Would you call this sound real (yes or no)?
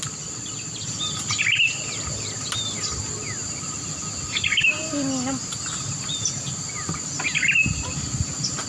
yes